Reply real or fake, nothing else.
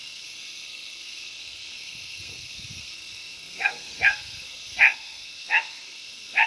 fake